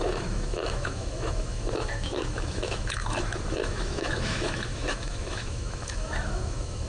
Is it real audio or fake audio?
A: fake